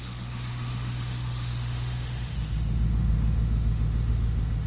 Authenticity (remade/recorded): remade